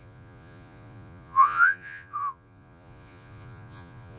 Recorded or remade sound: remade